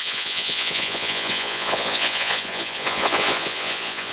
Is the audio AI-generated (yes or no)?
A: yes